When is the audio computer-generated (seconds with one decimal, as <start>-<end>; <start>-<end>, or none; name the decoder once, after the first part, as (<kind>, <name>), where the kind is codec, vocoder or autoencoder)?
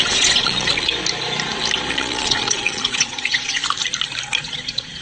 0.0-0.9 (vocoder, Vocos); 1.9-3.6; 4.4-5.0